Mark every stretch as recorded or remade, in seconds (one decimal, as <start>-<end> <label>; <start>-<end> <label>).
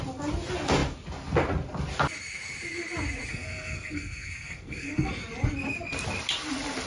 0.0-3.3 recorded; 3.3-5.1 remade; 5.1-6.9 recorded